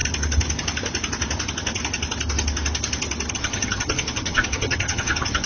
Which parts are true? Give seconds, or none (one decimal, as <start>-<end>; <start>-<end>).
0.0-3.3